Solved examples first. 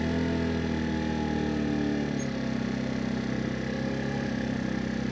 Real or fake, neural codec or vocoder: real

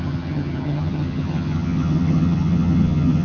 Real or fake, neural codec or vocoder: fake, vocoder, HiFi-GAN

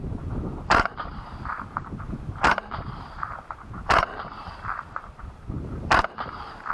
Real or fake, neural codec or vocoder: fake, vocoder, BigVGAN v2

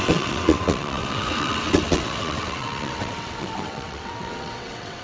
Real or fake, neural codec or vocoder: fake, vocoder, WaveNeXt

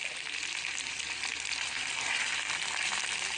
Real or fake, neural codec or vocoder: real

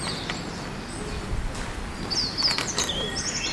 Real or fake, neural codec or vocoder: real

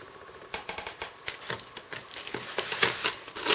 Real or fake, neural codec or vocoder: real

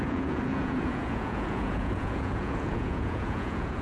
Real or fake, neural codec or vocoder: fake, vocoder, Vocos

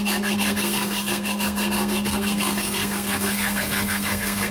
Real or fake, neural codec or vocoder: fake, codec, SNAC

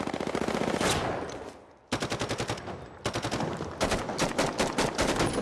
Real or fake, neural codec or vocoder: real